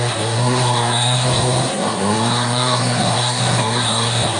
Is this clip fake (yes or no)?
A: yes